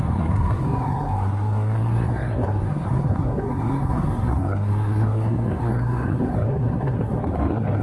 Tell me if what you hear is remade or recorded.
remade